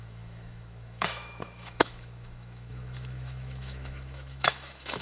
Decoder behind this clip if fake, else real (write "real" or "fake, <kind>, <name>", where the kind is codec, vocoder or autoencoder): fake, autoencoder, DAC-VAE